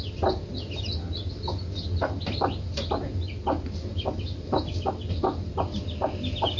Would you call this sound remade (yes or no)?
no